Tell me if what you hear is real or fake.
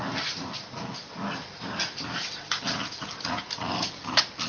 real